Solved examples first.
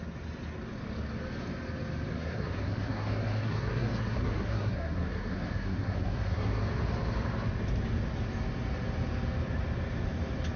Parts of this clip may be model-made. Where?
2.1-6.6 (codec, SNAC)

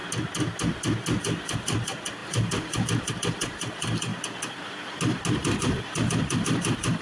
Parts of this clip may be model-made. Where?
1.2-4.1 (vocoder, BigVGAN v2); 5.5-7.0

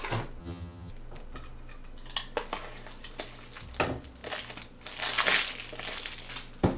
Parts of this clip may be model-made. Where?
0.4-0.9 (vocoder, HiFi-GAN)

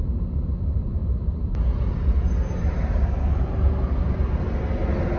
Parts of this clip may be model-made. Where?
none

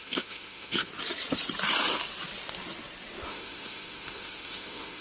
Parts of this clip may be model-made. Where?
0.0-0.9 (autoencoder, DAC-VAE); 3.3-5.0

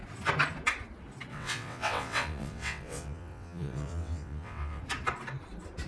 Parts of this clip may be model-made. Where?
1.3-4.8 (vocoder, WaveNeXt)

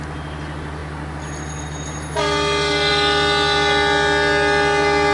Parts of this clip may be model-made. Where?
none

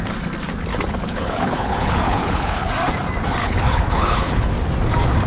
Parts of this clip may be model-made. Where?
0.7-2.7 (codec, HILCodec); 3.4-4.5